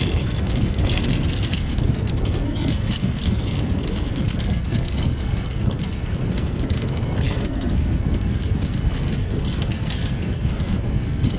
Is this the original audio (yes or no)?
no